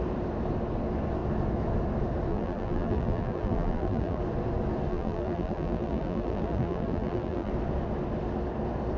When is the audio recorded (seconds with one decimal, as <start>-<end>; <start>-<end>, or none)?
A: 0.0-2.3; 4.2-4.9; 7.5-9.0